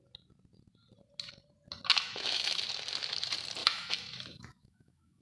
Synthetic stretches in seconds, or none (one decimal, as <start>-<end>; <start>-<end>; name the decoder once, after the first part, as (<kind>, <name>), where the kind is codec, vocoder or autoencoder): 1.9-2.6 (autoencoder, DAC-VAE); 3.6-5.2